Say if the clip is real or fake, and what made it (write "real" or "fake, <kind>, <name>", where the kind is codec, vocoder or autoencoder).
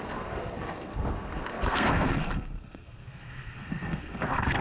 fake, codec, SNAC